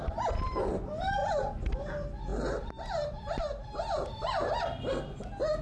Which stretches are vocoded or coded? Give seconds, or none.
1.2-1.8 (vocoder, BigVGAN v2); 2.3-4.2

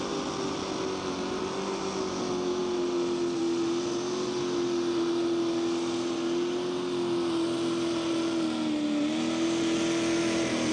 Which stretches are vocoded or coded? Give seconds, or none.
none

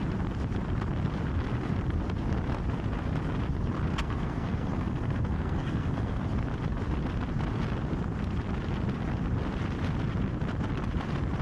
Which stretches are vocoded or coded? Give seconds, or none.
3.9-6.2 (codec, SNAC)

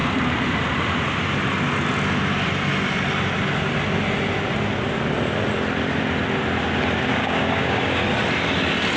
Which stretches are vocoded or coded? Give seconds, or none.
7.2-8.0 (codec, DAC)

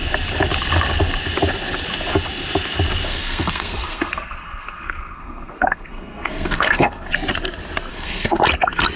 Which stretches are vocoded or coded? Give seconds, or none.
3.1-7.1 (codec, SNAC); 7.9-8.4

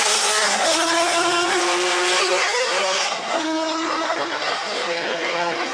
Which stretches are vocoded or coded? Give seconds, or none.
0.0-1.6 (codec, SNAC); 2.2-5.7

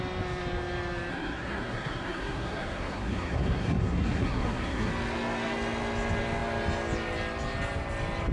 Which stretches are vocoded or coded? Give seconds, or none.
1.1-4.9 (codec, SNAC)

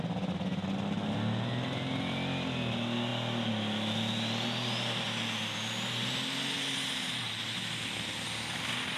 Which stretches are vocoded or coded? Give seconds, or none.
none